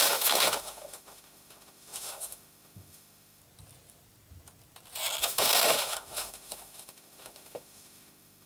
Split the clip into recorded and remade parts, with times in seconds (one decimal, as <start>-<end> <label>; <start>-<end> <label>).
0.0-3.4 remade; 3.4-5.2 recorded; 5.2-8.5 remade